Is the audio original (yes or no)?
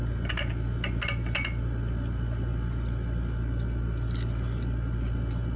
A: yes